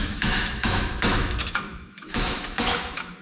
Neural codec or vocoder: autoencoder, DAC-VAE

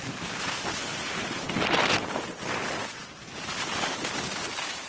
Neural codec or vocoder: none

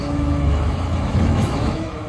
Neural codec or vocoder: autoencoder, DAC-VAE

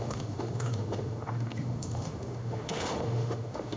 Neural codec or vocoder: autoencoder, DAC-VAE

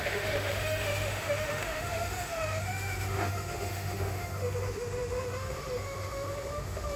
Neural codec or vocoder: autoencoder, DAC-VAE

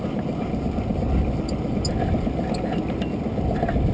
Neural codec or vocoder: none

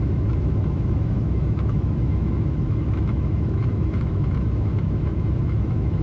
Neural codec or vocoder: autoencoder, DAC-VAE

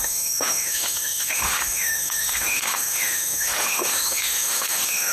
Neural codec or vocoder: autoencoder, DAC-VAE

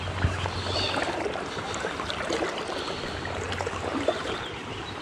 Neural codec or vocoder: none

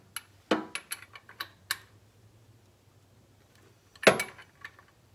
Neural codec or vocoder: none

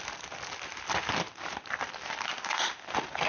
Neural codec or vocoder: none